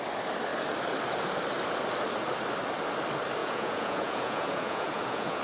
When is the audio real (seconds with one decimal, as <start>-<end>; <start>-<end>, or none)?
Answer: 0.0-3.4